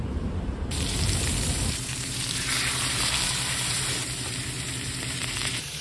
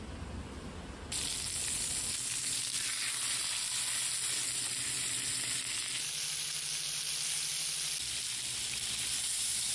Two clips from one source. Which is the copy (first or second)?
first